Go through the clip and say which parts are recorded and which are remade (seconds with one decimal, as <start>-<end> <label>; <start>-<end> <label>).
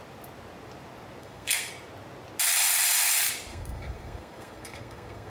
0.0-1.2 recorded; 1.2-1.7 remade; 1.7-3.5 recorded; 3.5-5.3 remade